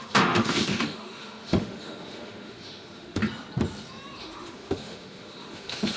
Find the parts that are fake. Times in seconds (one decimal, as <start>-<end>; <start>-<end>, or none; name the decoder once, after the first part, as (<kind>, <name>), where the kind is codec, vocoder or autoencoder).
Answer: 0.0-3.2 (autoencoder, DAC-VAE); 4.2-6.0